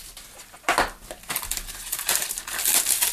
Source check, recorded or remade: recorded